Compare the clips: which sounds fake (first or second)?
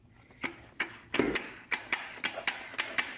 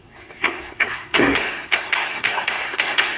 second